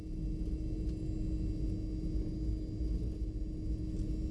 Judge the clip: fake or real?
real